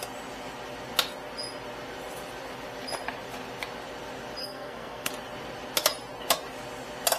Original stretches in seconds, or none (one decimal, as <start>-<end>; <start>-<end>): 0.0-4.4; 5.1-7.2